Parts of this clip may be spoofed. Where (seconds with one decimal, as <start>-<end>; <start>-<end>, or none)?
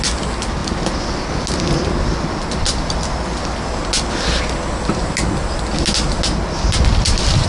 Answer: none